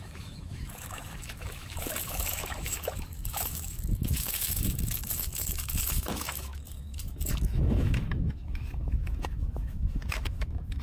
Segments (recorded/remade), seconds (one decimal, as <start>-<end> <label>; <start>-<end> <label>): 0.0-10.8 remade